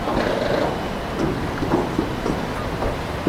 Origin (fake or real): real